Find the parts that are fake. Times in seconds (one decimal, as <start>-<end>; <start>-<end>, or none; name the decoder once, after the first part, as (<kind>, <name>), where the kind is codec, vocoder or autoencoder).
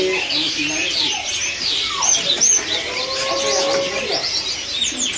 none